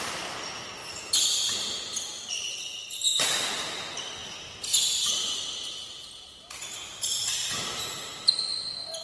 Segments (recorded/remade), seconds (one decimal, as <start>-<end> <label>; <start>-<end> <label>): 0.0-9.0 recorded